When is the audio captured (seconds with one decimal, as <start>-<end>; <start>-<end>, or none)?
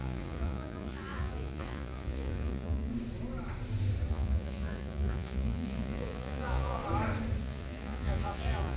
2.9-4.1; 6.8-7.4